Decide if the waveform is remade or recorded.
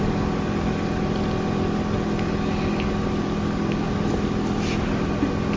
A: recorded